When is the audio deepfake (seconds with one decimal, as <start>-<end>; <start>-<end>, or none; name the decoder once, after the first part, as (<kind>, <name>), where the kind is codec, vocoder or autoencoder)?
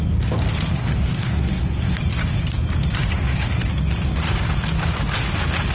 0.7-2.0 (codec, SNAC); 3.0-3.6